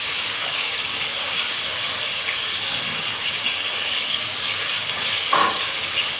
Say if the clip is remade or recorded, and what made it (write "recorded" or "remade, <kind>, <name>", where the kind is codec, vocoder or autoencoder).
remade, codec, DAC